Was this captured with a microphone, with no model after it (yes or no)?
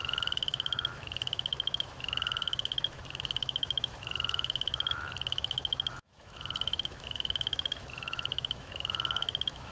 no